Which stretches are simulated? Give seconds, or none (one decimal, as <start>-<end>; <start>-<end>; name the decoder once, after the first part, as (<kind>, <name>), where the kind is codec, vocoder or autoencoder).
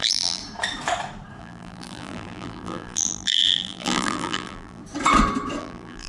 0.0-0.4 (vocoder, BigVGAN v2); 1.4-4.8; 5.6-6.1